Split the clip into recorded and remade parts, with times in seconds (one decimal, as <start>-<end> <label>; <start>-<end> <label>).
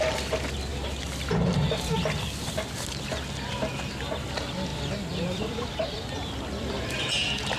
0.0-4.7 recorded; 4.7-7.1 remade; 7.1-7.6 recorded